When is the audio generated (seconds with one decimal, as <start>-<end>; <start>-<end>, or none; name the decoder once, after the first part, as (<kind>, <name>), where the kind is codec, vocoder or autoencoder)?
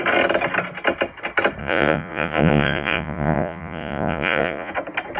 1.6-4.7 (vocoder, Vocos)